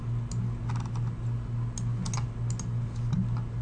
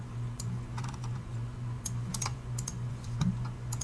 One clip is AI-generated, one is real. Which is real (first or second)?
first